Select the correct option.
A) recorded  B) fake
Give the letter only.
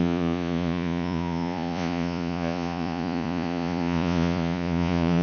B